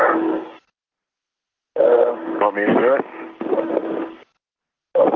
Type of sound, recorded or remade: recorded